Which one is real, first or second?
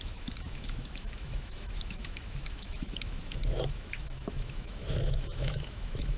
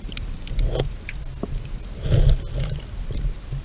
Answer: second